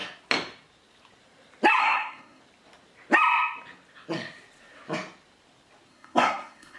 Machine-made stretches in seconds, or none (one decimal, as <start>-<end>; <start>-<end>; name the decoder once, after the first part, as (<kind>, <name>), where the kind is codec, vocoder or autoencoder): 1.8-2.4 (codec, SNAC); 5.9-6.8